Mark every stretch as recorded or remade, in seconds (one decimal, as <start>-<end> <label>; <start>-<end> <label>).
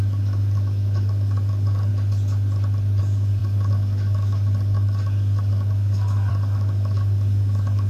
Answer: 0.0-1.9 remade; 1.9-3.0 recorded; 3.0-7.9 remade